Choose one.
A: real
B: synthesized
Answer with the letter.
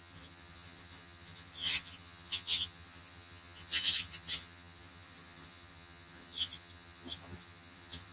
B